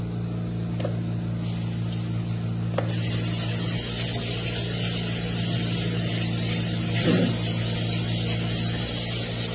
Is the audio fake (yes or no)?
no